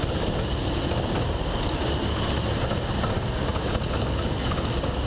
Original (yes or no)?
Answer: yes